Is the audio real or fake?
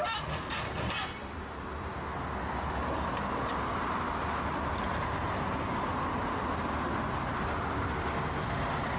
real